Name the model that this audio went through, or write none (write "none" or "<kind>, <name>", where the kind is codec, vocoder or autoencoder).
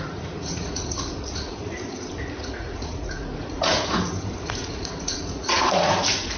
vocoder, Vocos